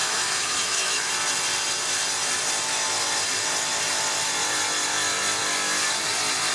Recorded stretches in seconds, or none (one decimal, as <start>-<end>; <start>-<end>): 1.1-6.5